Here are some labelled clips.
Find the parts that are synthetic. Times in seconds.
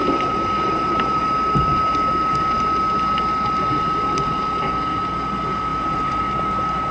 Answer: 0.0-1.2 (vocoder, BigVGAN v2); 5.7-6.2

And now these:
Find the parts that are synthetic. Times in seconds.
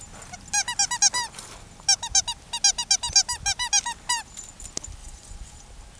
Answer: 5.0-5.6 (vocoder, Vocos)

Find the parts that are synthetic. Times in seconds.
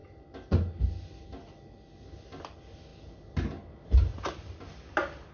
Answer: none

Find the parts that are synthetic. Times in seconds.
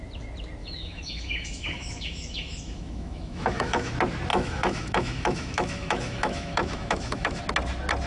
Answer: 0.6-3.9 (autoencoder, DAC-VAE); 4.3-7.4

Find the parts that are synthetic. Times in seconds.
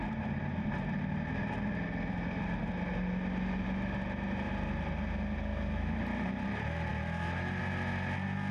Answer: 5.5-6.0 (autoencoder, DAC-VAE)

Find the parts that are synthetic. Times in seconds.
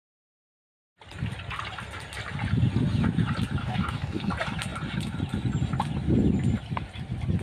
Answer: 3.6-4.3 (codec, DAC)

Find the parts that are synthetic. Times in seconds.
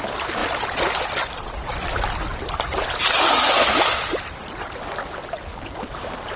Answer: none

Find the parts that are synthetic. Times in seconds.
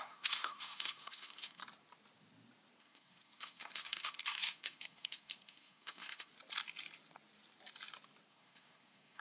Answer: 0.0-1.6 (codec, SNAC); 2.8-6.3; 8.3-9.2